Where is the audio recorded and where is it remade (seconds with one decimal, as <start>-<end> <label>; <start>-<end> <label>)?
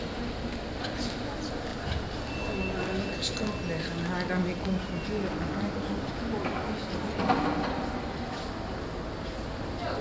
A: 0.0-10.0 recorded